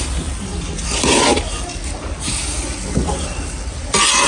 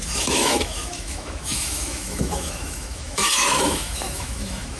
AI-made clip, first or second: second